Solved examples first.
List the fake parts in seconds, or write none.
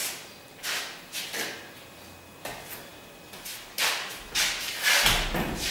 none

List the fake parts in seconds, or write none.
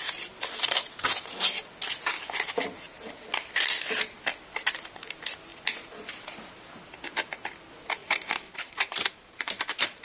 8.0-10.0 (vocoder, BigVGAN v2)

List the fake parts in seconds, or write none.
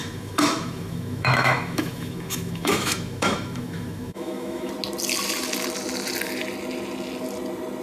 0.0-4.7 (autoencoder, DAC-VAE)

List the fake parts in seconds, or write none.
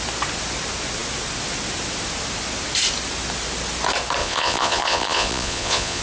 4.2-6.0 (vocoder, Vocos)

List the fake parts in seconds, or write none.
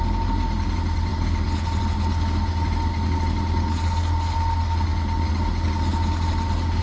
none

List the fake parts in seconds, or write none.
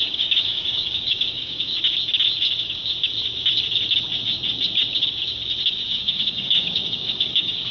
0.0-1.7 (codec, DAC); 5.7-7.7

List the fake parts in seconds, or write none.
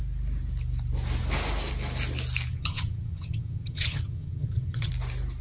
2.5-4.9 (vocoder, HiFi-GAN)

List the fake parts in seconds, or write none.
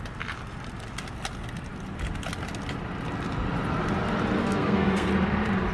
4.4-5.1 (codec, SNAC)